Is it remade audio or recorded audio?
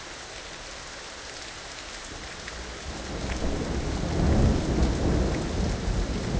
recorded